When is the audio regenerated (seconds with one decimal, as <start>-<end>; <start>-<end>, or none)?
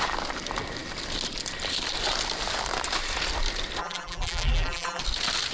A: 3.8-5.0